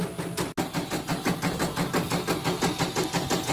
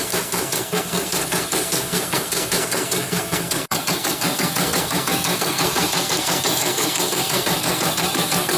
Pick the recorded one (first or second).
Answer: first